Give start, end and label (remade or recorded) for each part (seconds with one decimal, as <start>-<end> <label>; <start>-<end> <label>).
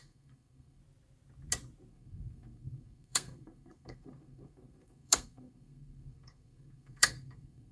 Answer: 0.0-0.8 remade; 0.8-1.9 recorded; 1.9-7.7 remade